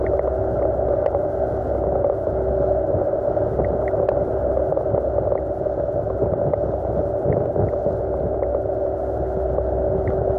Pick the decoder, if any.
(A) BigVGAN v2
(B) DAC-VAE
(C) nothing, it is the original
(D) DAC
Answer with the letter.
C